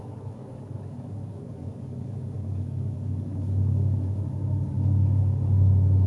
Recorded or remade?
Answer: remade